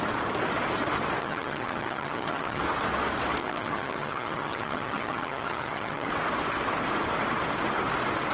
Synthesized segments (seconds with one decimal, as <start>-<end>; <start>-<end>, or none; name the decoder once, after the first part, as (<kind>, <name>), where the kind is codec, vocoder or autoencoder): 1.2-2.6 (vocoder, HiFi-GAN); 3.4-6.1